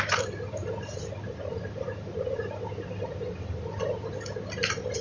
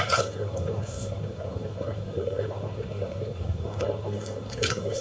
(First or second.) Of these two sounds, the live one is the first